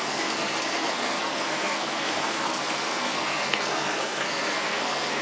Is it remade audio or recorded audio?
remade